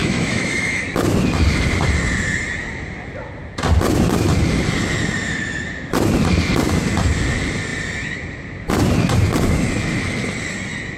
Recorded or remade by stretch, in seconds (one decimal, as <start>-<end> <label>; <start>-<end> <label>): 0.0-0.8 remade; 0.8-11.0 recorded